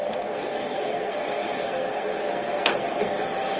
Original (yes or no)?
no